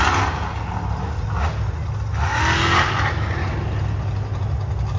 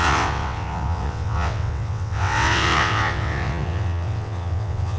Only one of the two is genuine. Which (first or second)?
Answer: first